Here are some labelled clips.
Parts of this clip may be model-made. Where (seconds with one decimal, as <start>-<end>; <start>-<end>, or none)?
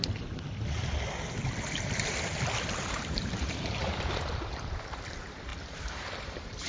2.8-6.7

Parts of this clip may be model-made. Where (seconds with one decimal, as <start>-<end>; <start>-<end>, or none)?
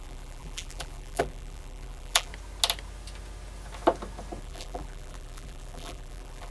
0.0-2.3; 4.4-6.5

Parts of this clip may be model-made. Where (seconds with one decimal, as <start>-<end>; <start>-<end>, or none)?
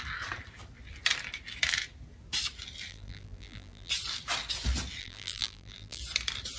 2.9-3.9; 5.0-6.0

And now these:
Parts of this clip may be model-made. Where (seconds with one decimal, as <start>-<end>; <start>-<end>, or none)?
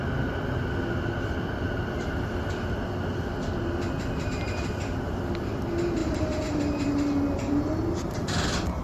6.0-7.6